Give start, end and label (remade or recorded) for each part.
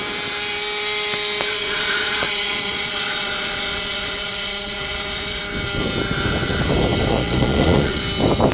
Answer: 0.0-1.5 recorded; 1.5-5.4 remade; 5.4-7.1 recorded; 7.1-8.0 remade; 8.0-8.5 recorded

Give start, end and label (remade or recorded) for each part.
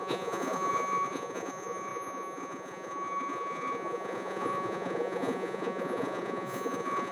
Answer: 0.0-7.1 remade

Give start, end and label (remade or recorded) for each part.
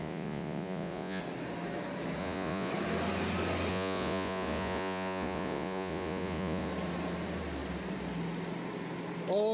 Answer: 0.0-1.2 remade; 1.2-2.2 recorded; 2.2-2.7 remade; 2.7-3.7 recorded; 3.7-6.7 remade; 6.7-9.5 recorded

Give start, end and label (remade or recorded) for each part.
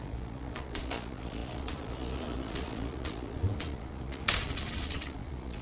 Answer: 0.0-5.6 remade